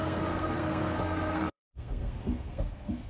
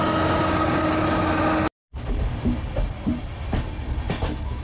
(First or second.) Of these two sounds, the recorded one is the second